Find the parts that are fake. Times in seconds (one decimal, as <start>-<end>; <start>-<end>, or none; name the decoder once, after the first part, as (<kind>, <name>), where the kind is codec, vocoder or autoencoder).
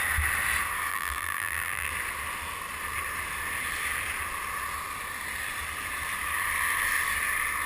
0.9-1.9 (vocoder, BigVGAN v2)